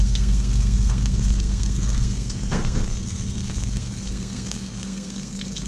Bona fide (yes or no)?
no